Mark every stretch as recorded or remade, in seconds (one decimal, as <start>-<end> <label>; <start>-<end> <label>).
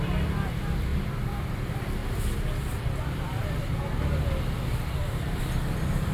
0.0-6.1 recorded